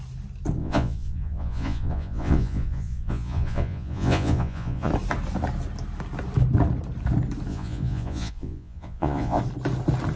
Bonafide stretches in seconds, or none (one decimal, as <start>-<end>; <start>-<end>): 0.0-0.6; 4.9-7.5; 9.4-10.2